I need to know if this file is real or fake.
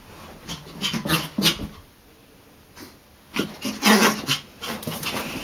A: real